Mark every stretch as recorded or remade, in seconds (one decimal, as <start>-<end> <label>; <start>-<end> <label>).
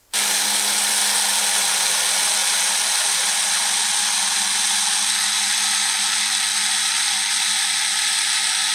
0.0-8.7 recorded